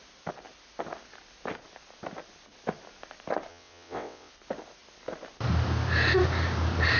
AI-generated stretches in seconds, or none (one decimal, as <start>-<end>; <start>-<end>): 3.5-4.3

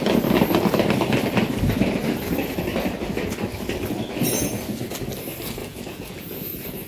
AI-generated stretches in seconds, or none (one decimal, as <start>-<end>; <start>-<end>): 5.6-6.9

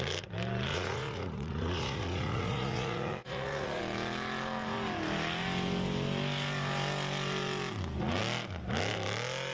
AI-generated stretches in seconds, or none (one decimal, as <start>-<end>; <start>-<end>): 0.7-3.8

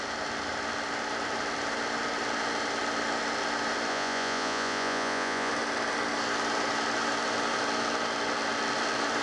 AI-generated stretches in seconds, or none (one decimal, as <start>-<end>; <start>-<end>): 3.9-5.5

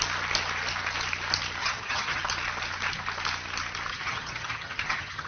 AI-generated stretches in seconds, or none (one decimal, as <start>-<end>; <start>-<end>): 1.6-2.2; 3.9-5.3

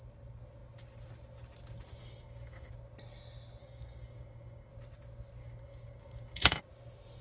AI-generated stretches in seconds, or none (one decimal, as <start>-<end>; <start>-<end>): 2.0-2.7; 3.6-4.7; 5.4-6.6

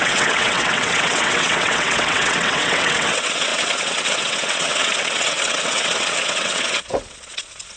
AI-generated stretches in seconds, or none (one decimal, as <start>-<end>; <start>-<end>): 0.0-7.8